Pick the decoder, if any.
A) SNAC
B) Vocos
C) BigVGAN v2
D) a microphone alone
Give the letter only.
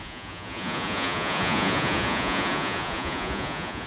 B